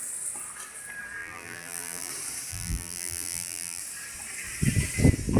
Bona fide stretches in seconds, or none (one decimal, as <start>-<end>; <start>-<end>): 0.0-1.2; 2.1-2.5; 3.8-5.4